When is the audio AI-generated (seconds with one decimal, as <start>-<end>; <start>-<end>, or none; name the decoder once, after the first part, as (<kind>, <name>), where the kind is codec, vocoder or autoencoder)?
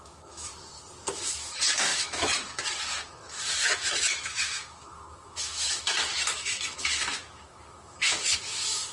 0.0-0.5 (autoencoder, DAC-VAE); 1.1-8.9